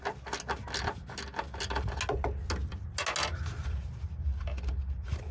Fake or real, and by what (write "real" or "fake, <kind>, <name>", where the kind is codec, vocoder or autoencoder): real